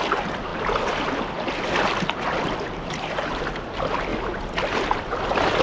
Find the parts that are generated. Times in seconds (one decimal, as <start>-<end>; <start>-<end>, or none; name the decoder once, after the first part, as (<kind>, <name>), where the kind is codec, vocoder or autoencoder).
none